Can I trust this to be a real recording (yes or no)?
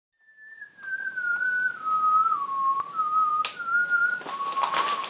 yes